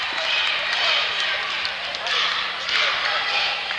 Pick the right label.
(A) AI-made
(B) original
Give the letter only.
A